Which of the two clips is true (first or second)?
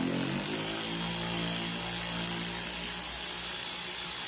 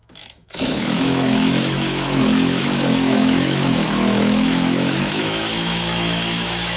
first